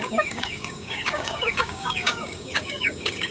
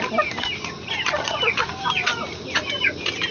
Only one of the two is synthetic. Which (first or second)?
first